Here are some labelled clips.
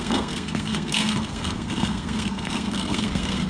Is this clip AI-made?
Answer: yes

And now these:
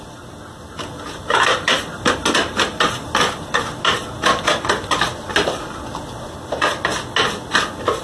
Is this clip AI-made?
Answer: no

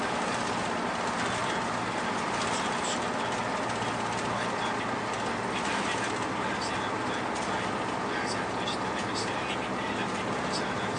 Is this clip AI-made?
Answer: no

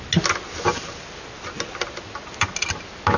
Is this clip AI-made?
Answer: no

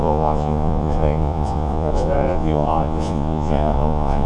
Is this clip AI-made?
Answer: yes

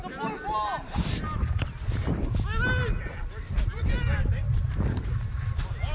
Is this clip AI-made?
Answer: no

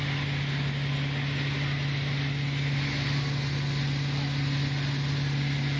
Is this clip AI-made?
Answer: no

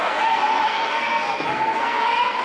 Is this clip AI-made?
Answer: yes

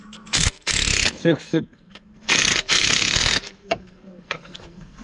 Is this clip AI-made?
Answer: yes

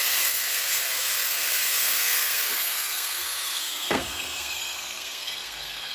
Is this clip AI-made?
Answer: yes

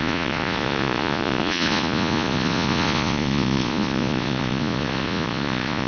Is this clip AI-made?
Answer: yes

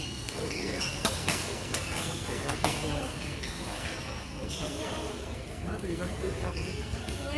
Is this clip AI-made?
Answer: yes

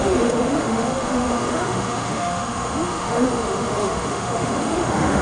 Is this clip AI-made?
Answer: yes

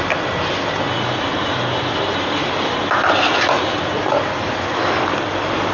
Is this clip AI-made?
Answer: no